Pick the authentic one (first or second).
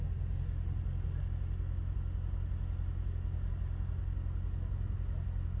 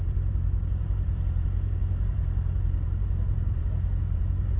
first